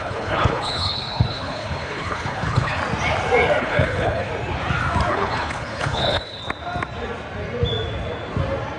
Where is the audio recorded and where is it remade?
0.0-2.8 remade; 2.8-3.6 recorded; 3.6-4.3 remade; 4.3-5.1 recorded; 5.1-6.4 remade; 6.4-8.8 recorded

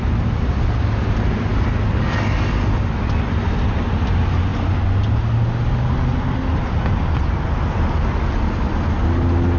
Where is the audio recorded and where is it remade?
0.0-9.6 recorded

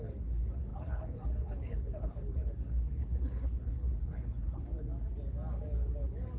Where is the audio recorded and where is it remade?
0.0-4.9 remade; 4.9-6.4 recorded

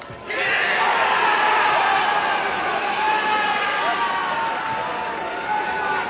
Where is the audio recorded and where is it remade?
0.0-6.1 recorded

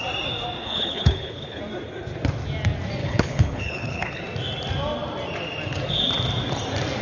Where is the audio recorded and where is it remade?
0.0-0.6 recorded; 0.6-1.6 remade; 1.6-3.0 recorded; 3.0-4.2 remade; 4.2-7.0 recorded

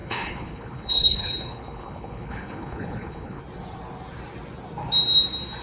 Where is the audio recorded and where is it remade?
0.0-3.4 remade; 3.4-5.6 recorded

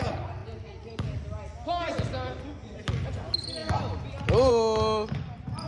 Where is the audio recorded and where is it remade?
0.0-5.7 recorded

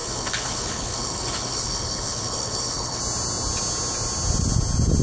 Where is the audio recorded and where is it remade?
0.0-3.0 remade; 3.0-5.0 recorded